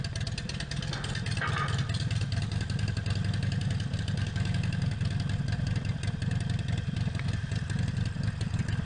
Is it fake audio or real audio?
real